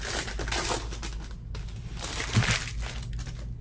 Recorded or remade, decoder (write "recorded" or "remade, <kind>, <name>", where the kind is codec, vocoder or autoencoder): recorded